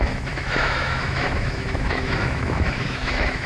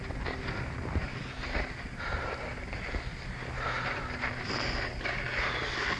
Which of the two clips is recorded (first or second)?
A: second